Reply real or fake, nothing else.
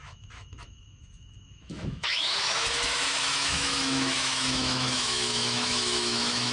fake